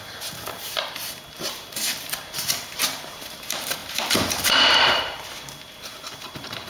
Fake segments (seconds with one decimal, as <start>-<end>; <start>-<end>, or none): 0.0-6.7